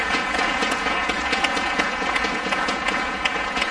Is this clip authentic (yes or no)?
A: no